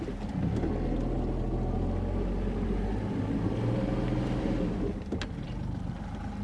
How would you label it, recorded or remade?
recorded